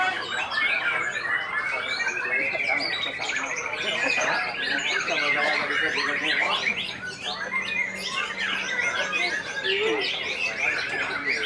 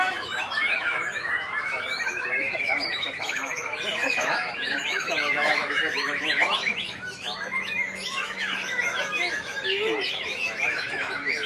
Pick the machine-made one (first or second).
second